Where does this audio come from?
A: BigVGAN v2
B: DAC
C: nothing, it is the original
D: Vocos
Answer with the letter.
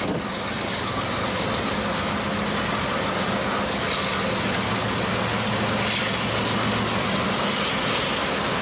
C